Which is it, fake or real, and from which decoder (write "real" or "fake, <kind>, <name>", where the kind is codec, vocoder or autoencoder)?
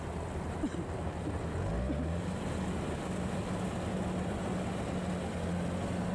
real